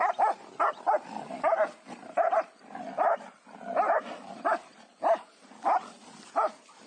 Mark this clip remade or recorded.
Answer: recorded